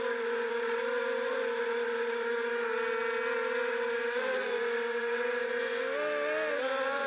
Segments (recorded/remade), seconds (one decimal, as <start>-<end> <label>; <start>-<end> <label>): 0.0-2.7 remade; 2.7-3.7 recorded; 3.7-5.8 remade; 5.8-6.5 recorded; 6.5-7.1 remade